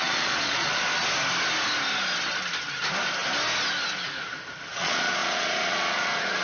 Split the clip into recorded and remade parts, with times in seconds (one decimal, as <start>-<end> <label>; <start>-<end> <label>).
0.0-0.9 remade; 0.9-4.7 recorded; 4.7-6.4 remade